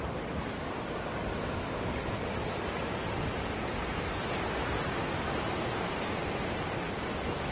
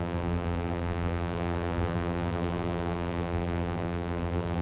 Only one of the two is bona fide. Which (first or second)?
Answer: first